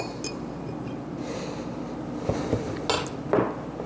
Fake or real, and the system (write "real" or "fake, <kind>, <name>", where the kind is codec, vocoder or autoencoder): real